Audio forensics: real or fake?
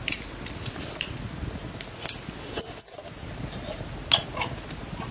real